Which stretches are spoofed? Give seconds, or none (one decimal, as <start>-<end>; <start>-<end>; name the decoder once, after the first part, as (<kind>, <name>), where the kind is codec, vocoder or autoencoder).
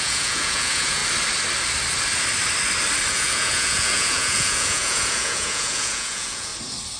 0.0-1.0 (vocoder, Vocos); 3.1-6.5